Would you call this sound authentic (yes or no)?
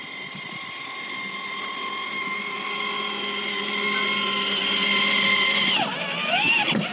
yes